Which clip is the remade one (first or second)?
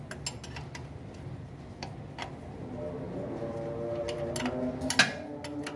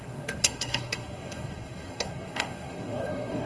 second